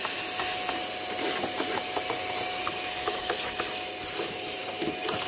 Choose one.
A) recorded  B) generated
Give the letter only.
A